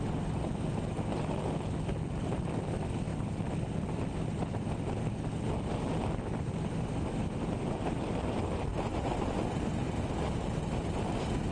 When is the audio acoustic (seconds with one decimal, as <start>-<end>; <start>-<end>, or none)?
0.0-8.7; 9.2-11.5